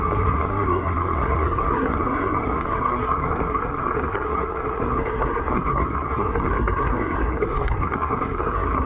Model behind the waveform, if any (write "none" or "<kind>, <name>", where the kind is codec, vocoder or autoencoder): codec, SNAC